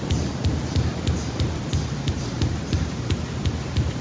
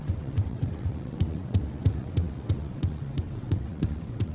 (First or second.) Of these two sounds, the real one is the first